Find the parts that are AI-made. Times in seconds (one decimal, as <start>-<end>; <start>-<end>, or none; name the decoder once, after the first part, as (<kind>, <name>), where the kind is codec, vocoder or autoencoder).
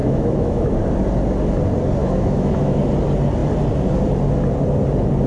0.0-0.7 (autoencoder, DAC-VAE); 2.0-2.8